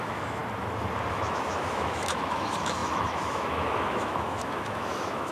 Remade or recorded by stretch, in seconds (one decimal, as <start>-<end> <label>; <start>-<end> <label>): 0.0-0.4 remade; 0.4-1.1 recorded; 1.1-5.3 remade